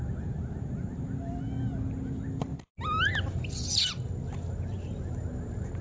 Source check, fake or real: real